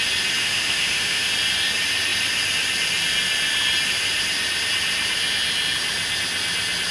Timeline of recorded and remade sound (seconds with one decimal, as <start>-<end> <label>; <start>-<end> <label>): 0.0-0.4 recorded; 0.4-1.3 remade; 1.3-6.9 recorded